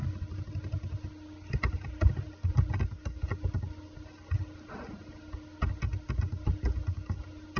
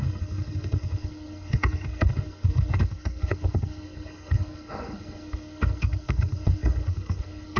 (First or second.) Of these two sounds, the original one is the first